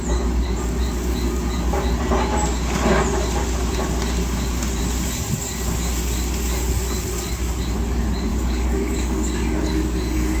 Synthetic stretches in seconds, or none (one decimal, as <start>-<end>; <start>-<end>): 8.3-10.4